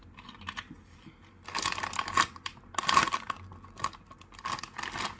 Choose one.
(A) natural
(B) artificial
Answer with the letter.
A